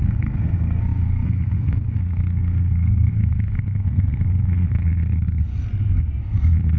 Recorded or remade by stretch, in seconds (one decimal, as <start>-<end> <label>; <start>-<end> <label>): 0.0-5.5 remade; 5.5-6.2 recorded; 6.2-6.8 remade

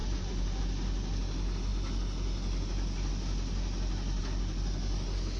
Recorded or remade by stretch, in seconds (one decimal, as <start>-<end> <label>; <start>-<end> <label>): 0.0-0.6 remade; 0.6-5.4 recorded

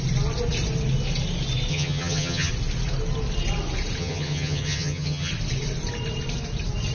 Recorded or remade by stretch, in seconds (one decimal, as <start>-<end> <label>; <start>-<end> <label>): 0.0-1.7 recorded; 1.7-2.5 remade; 2.5-4.0 recorded; 4.0-5.3 remade; 5.3-6.9 recorded

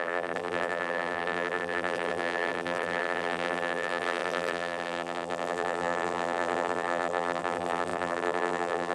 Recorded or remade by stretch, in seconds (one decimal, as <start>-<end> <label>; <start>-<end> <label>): 0.0-8.9 remade

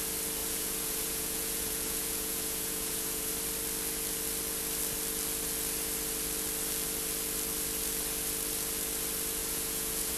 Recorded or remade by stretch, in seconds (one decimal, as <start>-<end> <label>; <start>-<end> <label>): 0.0-0.4 recorded; 0.4-3.3 remade; 3.3-9.4 recorded; 9.4-10.2 remade

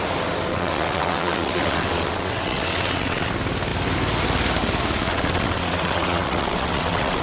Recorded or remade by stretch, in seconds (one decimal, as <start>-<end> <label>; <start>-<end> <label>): 0.0-0.5 recorded; 0.5-3.3 remade; 3.3-5.0 recorded; 5.0-7.2 remade

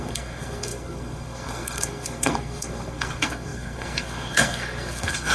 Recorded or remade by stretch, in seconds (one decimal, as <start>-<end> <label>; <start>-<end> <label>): 0.0-5.3 remade

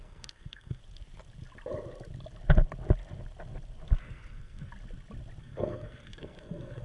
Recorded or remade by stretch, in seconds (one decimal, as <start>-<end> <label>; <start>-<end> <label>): 0.0-0.8 remade; 0.8-4.0 recorded; 4.0-4.7 remade; 4.7-5.4 recorded; 5.4-6.8 remade